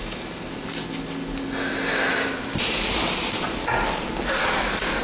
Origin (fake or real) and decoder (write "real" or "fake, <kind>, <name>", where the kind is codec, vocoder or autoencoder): real